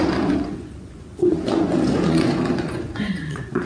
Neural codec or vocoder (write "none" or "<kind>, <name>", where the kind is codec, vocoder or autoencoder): vocoder, Vocos